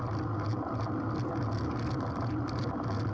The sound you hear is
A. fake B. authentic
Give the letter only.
B